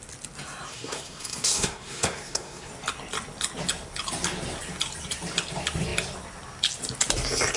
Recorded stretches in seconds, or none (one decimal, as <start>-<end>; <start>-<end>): 0.0-0.7; 2.7-7.6